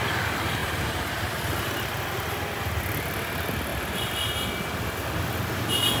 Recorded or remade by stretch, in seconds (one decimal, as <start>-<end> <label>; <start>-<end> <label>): 0.0-6.0 recorded